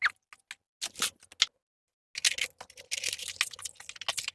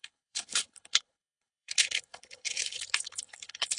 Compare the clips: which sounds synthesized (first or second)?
second